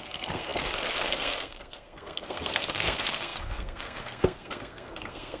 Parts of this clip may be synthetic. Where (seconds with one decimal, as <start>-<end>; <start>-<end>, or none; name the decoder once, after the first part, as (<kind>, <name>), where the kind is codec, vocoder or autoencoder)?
0.0-5.4 (codec, SNAC)